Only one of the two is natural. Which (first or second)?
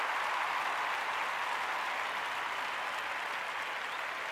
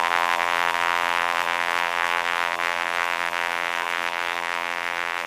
first